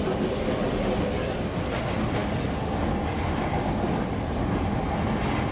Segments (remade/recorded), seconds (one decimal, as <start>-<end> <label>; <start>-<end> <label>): 0.0-5.5 recorded